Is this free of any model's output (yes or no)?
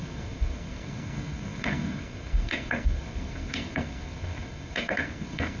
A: no